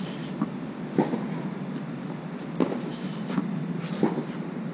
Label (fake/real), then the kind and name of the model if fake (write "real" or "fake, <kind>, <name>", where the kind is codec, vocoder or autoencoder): real